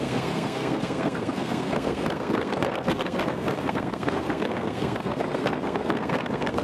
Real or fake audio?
fake